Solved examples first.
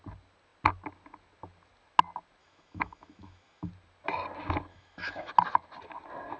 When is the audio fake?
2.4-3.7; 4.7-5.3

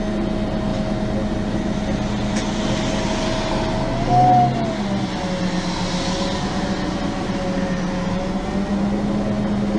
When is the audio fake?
none